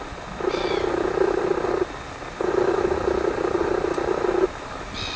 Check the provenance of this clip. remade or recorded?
recorded